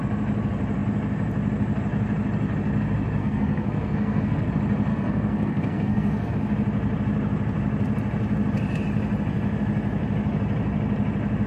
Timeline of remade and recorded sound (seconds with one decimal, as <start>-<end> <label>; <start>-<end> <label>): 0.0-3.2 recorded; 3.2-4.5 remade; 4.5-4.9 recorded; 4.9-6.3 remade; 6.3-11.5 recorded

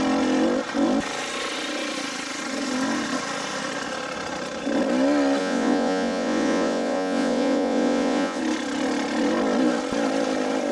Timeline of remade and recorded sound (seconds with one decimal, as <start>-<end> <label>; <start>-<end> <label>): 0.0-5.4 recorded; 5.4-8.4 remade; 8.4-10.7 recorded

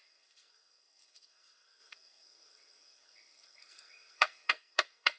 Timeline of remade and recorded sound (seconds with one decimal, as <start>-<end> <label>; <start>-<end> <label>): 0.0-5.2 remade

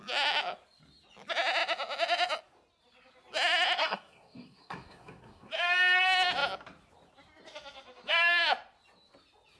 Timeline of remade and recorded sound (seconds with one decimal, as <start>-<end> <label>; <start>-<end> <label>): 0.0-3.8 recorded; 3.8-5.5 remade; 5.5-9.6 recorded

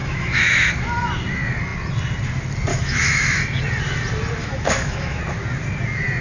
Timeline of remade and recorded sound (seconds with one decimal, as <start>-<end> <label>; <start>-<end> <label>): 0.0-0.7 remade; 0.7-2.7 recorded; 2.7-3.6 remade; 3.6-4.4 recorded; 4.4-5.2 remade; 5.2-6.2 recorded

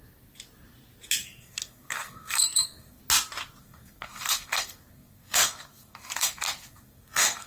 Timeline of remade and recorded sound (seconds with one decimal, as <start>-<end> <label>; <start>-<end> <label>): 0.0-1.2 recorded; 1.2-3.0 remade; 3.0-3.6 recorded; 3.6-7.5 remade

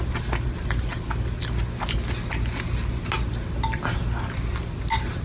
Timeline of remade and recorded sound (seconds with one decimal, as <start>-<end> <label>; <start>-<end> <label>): 0.0-5.2 recorded